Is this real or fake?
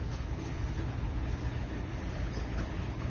fake